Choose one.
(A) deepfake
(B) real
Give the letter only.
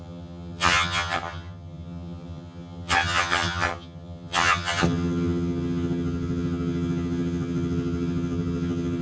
A